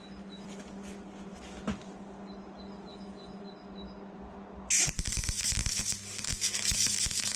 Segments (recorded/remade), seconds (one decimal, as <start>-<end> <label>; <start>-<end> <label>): 0.0-2.9 recorded; 2.9-3.4 remade; 3.4-5.2 recorded; 5.2-5.8 remade; 5.8-6.3 recorded; 6.3-7.4 remade

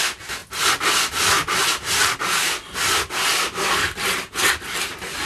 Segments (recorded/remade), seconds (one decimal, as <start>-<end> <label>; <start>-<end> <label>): 0.0-5.3 recorded

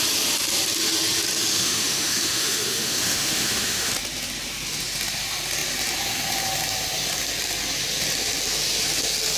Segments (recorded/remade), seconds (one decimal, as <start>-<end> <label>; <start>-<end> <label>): 0.0-1.5 recorded; 1.5-3.9 remade; 3.9-9.4 recorded

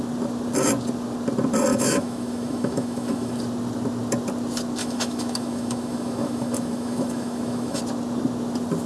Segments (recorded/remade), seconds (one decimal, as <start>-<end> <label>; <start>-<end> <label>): 0.0-1.7 recorded; 1.7-3.4 remade; 3.4-4.8 recorded; 4.8-7.8 remade; 7.8-8.9 recorded

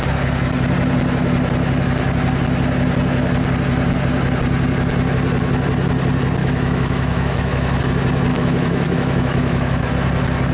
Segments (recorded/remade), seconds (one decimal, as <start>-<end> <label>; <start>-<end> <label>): 0.0-6.4 recorded; 6.4-7.8 remade; 7.8-8.3 recorded; 8.3-9.9 remade; 9.9-10.5 recorded